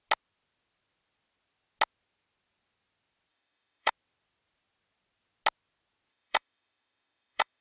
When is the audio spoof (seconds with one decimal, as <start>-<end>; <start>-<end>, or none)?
3.3-3.9; 6.1-7.6